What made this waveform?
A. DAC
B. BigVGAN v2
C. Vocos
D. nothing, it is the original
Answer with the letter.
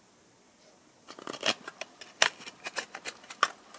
D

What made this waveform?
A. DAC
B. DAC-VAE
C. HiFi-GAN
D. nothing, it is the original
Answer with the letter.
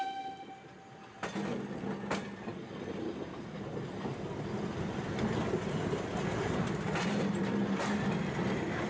D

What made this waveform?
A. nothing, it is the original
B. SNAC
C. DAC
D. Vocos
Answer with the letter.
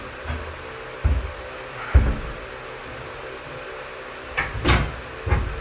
A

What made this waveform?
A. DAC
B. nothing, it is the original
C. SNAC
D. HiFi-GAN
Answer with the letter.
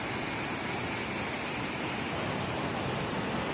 B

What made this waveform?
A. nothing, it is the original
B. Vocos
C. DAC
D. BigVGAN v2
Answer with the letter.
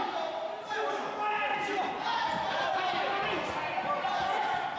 A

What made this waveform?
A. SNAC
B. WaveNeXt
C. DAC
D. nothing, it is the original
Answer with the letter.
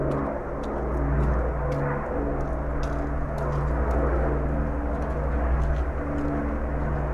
D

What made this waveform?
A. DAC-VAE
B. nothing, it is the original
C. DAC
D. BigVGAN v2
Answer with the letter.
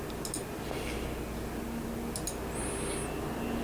B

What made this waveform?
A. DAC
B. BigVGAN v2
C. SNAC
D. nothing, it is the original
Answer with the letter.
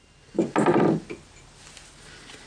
D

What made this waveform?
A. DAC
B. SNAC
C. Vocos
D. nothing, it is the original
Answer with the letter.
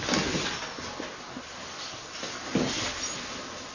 D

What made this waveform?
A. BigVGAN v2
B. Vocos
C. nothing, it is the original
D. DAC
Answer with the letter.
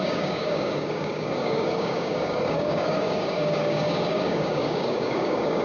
D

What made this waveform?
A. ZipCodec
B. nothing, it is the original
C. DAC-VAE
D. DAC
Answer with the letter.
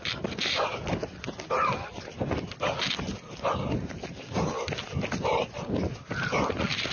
B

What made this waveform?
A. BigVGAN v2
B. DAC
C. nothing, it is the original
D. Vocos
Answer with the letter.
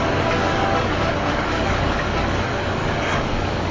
B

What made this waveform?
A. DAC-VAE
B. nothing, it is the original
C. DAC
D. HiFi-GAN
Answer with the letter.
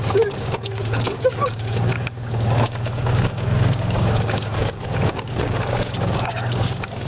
C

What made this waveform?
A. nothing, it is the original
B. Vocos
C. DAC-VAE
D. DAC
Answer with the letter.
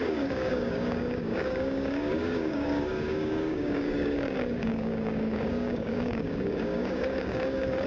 D